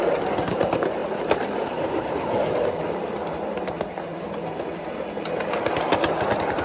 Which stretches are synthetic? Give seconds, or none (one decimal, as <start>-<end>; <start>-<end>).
1.0-3.6; 4.1-5.5